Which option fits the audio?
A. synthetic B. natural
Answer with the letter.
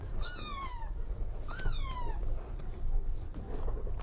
B